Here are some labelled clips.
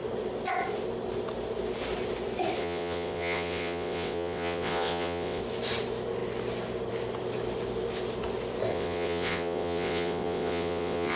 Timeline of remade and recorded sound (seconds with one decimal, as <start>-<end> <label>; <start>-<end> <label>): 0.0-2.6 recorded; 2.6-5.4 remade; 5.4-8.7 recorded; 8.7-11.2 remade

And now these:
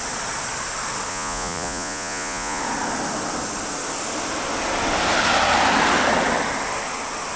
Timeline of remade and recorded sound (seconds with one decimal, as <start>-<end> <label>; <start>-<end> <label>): 0.0-1.1 recorded; 1.1-2.6 remade; 2.6-7.4 recorded

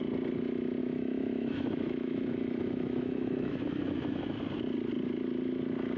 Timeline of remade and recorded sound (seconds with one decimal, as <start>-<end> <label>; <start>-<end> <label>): 0.0-0.8 recorded; 0.8-4.4 remade; 4.4-6.0 recorded